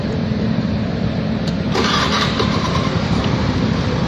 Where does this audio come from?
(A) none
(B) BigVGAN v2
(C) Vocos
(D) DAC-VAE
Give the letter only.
B